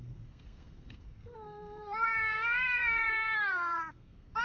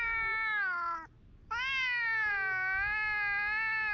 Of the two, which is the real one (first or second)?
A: second